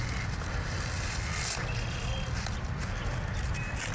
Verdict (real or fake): real